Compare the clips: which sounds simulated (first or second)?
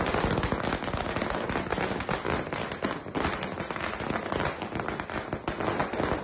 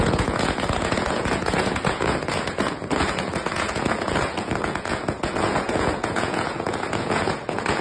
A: second